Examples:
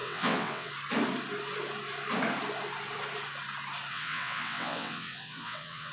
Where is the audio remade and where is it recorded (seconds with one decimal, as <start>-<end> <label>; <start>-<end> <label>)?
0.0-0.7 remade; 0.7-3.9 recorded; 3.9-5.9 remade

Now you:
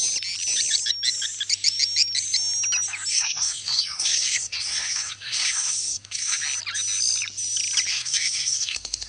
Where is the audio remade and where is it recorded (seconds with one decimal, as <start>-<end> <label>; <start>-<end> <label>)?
0.0-3.1 recorded; 3.1-6.4 remade; 6.4-7.9 recorded; 7.9-9.1 remade

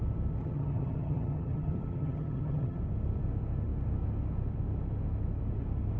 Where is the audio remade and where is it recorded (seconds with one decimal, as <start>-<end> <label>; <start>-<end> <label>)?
0.0-0.4 recorded; 0.4-2.8 remade; 2.8-6.0 recorded

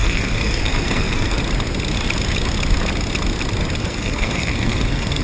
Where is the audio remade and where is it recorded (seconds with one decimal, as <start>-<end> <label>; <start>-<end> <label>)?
0.0-1.4 remade; 1.4-3.8 recorded; 3.8-5.2 remade

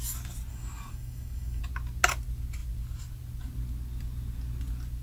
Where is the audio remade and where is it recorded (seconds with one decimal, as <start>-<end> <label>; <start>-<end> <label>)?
0.0-0.5 recorded; 0.5-1.6 remade; 1.6-5.0 recorded

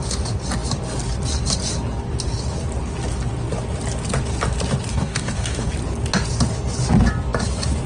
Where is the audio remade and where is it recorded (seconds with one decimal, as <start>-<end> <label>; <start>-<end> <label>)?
0.0-4.9 recorded; 4.9-5.7 remade; 5.7-7.9 recorded

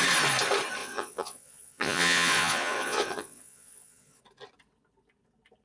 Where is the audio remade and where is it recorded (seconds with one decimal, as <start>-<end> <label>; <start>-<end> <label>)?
0.0-0.8 recorded; 0.8-4.2 remade; 4.2-5.6 recorded

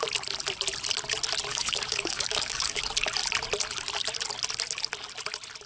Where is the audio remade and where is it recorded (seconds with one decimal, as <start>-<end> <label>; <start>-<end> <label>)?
0.0-1.5 recorded; 1.5-2.8 remade; 2.8-5.7 recorded